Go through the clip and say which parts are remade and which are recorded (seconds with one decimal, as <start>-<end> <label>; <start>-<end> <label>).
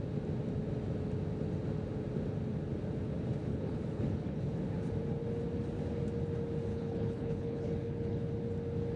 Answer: 0.0-3.5 recorded; 3.5-4.6 remade; 4.6-6.7 recorded; 6.7-8.3 remade; 8.3-9.0 recorded